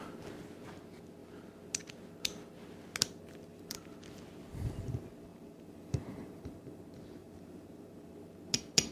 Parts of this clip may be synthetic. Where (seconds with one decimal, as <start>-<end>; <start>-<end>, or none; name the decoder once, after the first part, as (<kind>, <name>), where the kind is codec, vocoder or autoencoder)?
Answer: 3.5-4.0 (vocoder, BigVGAN v2); 5.3-6.8; 7.2-8.1